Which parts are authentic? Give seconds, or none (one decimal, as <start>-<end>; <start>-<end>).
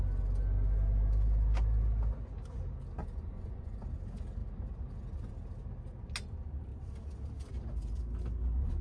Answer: 0.0-3.0; 3.8-8.8